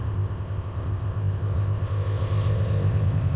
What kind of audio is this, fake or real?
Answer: fake